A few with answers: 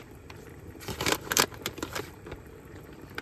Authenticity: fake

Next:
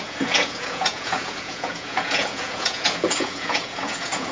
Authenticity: fake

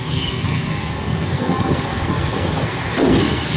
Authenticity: fake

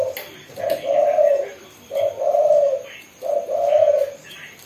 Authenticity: real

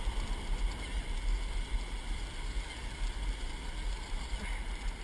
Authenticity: real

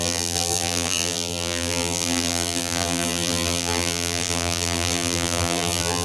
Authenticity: fake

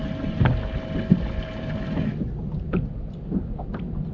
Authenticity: real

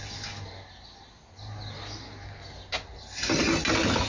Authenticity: real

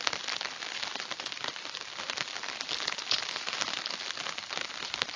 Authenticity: real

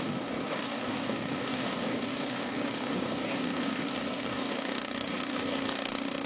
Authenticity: fake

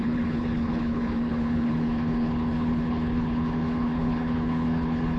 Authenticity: fake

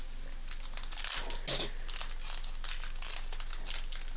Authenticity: real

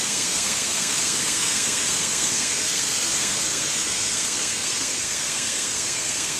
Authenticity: fake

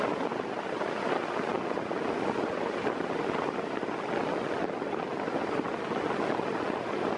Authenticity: real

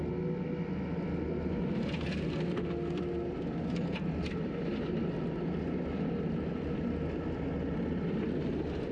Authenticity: real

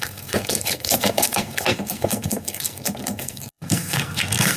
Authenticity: fake